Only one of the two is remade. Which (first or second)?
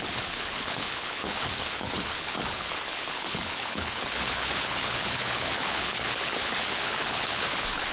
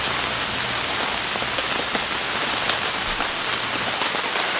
first